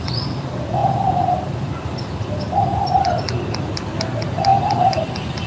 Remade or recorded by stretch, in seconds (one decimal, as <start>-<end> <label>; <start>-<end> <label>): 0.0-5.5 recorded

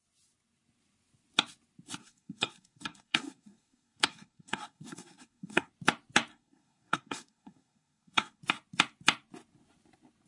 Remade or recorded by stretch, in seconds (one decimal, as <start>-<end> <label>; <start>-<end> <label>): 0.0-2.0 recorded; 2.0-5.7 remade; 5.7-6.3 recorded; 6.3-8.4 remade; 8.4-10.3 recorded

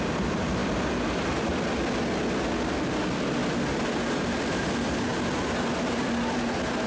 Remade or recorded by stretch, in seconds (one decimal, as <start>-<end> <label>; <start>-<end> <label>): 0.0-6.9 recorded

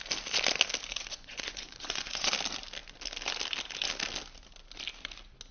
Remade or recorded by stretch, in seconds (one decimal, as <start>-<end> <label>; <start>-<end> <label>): 0.0-0.9 recorded; 0.9-2.3 remade; 2.3-5.5 recorded

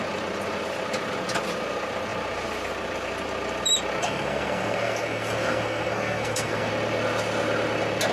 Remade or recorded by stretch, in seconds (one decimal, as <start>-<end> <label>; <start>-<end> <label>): 0.0-4.0 recorded; 4.0-6.7 remade; 6.7-8.1 recorded